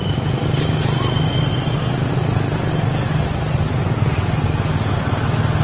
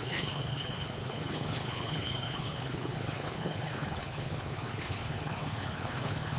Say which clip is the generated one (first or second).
second